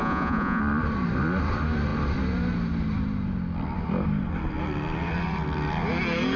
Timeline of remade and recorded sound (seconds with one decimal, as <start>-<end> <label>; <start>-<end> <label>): 0.0-0.6 remade; 0.6-6.4 recorded